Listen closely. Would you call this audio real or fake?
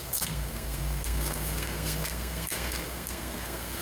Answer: fake